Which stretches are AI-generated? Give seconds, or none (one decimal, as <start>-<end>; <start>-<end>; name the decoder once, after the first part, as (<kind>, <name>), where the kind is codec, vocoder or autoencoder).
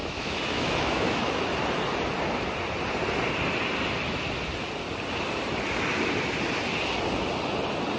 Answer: 0.0-1.4 (autoencoder, DAC-VAE)